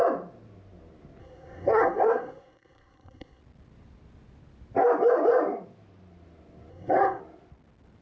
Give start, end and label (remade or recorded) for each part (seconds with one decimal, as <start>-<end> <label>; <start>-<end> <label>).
0.0-1.2 recorded; 1.2-3.4 remade; 3.4-6.7 recorded; 6.7-7.2 remade; 7.2-8.0 recorded